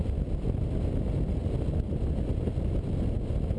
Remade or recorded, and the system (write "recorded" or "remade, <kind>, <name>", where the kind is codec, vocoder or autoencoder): recorded